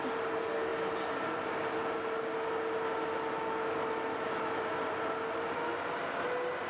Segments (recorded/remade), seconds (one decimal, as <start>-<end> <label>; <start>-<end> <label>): 0.0-6.7 recorded